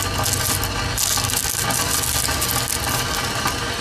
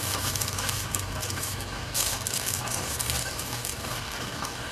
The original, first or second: first